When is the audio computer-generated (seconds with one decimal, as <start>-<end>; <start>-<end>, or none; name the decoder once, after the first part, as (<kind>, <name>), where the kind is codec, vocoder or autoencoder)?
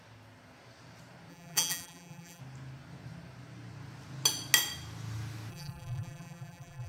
1.3-2.4 (vocoder, BigVGAN v2); 5.5-6.9